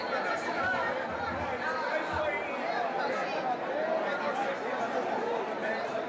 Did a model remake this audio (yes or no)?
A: no